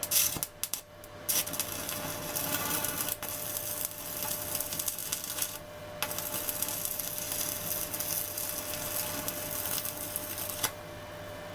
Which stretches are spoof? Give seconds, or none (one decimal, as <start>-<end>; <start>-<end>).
none